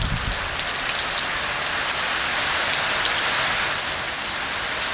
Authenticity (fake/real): real